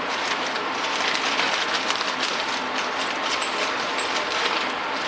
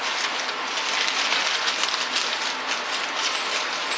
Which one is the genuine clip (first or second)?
second